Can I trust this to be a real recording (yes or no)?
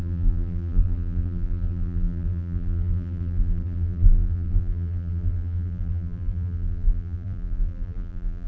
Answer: no